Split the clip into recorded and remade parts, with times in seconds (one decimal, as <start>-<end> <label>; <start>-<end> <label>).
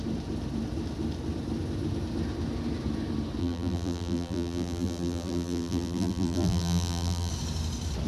0.0-3.4 recorded; 3.4-7.3 remade; 7.3-8.1 recorded